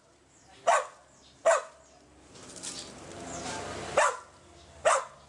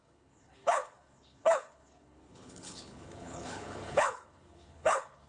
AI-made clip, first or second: second